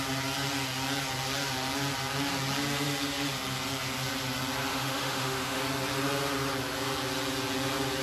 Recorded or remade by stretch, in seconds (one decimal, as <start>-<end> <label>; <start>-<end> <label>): 0.0-4.7 recorded; 4.7-5.6 remade; 5.6-8.0 recorded